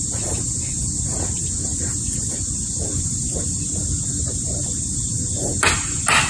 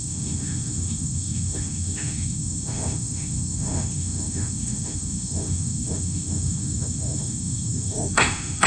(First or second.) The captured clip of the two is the first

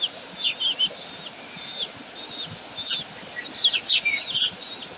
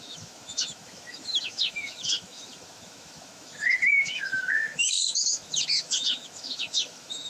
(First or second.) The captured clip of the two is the first